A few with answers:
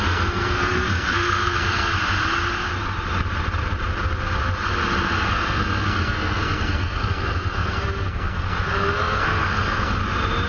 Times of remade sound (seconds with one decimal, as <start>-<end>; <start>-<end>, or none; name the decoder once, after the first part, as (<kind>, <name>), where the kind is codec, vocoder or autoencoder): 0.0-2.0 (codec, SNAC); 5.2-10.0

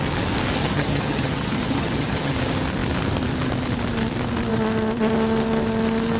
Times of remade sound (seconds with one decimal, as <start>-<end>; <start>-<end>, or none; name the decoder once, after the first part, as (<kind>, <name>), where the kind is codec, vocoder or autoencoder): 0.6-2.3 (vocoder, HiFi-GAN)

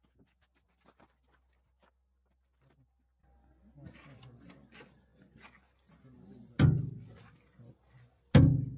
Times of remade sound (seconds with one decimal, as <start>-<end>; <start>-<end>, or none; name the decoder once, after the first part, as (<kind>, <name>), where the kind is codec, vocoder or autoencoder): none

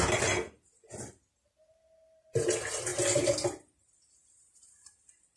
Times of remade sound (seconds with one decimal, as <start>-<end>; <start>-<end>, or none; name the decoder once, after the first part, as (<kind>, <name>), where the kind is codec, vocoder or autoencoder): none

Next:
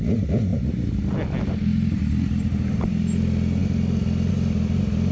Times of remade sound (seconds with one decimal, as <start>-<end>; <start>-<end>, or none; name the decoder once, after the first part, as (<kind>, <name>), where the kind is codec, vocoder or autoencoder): 0.5-1.1 (vocoder, BigVGAN v2); 1.7-2.9

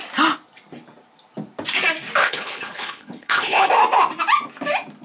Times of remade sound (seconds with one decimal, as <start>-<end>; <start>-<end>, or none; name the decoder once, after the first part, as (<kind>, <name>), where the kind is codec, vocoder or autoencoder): 2.2-3.7 (codec, HILCodec)